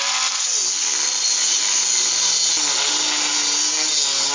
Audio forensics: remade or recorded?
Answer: recorded